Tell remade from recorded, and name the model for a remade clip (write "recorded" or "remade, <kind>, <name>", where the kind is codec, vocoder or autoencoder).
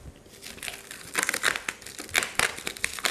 recorded